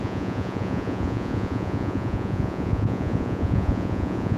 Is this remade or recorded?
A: remade